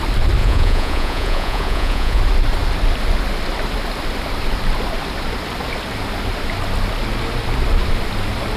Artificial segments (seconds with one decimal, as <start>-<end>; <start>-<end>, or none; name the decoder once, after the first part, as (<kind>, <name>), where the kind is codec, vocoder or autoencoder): 0.4-2.2 (vocoder, Vocos)